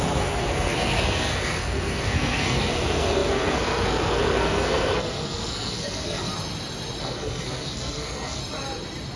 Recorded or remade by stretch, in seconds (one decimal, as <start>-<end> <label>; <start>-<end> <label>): 0.0-6.3 remade; 6.3-7.0 recorded; 7.0-8.4 remade; 8.4-9.2 recorded